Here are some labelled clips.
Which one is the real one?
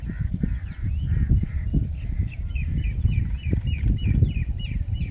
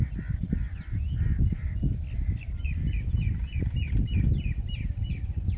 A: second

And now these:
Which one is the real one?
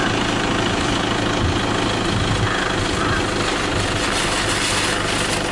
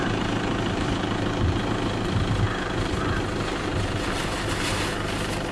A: first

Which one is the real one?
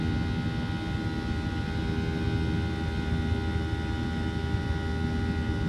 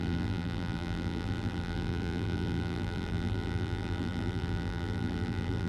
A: first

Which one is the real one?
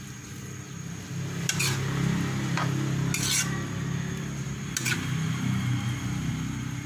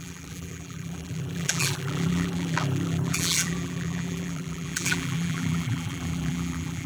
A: first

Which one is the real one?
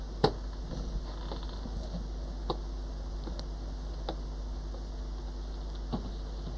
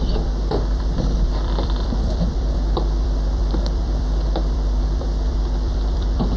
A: first